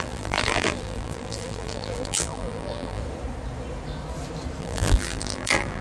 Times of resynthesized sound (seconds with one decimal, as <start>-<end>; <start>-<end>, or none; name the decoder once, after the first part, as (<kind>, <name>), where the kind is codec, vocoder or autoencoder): 0.0-3.0 (vocoder, BigVGAN v2); 4.6-5.8